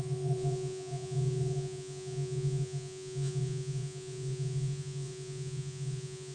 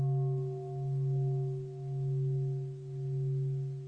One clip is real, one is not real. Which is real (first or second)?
second